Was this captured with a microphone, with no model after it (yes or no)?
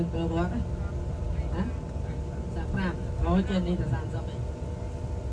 yes